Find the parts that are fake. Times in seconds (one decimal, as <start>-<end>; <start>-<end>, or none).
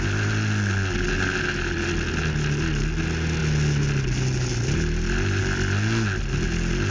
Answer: none